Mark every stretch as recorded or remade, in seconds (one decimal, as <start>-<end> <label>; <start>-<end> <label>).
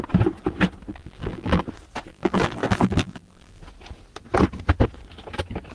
0.0-0.9 recorded; 0.9-1.6 remade; 1.6-2.1 recorded; 2.1-3.6 remade; 3.6-5.7 recorded